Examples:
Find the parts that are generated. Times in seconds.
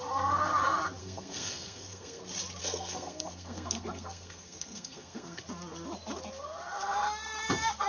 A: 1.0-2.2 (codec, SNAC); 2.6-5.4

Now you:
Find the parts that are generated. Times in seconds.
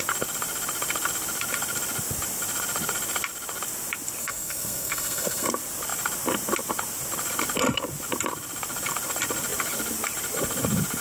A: 4.2-5.5 (codec, SNAC)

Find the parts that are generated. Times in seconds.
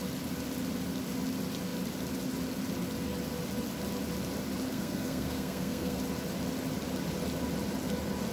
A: 4.7-6.0 (codec, SNAC)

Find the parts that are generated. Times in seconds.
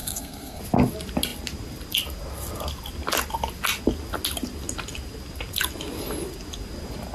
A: 0.0-0.6 (codec, SNAC)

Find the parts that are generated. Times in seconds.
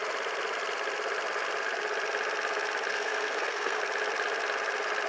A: 2.9-3.8 (codec, SNAC)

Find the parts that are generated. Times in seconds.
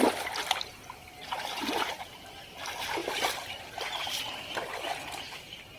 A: none